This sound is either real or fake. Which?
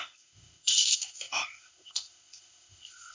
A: fake